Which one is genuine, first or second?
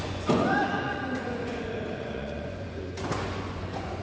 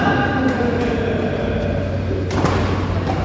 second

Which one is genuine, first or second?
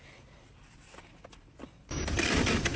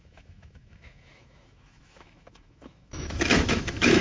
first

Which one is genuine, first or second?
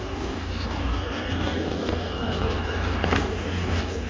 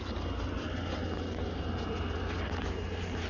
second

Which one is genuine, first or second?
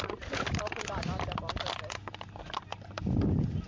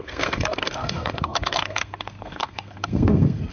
first